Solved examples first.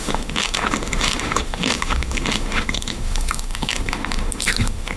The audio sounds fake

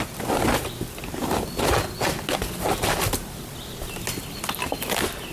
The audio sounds real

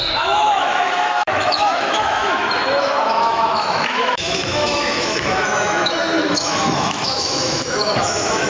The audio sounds fake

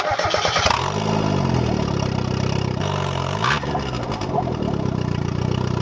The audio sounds real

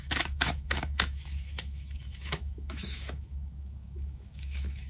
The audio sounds fake